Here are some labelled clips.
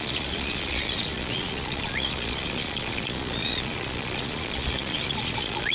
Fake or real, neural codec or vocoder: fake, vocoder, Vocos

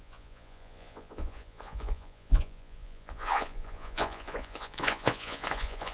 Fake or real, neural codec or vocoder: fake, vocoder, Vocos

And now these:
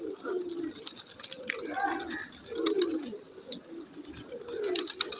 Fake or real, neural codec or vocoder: real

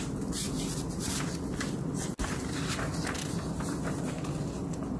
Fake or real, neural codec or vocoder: real